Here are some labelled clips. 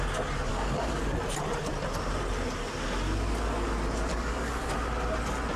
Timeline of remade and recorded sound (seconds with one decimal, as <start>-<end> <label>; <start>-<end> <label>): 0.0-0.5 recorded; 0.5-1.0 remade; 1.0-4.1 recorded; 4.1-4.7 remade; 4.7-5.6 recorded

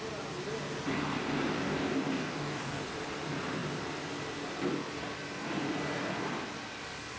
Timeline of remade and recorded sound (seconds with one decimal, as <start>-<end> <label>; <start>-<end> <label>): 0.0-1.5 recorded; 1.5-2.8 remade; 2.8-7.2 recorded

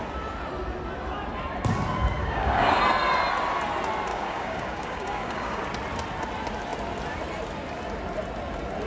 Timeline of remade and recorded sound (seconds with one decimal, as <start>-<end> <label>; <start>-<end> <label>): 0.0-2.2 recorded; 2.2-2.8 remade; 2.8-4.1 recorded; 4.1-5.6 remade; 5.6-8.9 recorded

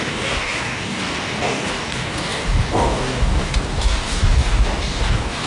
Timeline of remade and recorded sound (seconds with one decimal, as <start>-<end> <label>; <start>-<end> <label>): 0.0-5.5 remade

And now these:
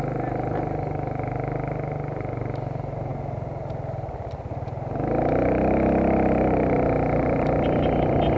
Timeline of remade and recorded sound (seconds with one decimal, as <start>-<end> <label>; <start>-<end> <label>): 0.0-8.4 recorded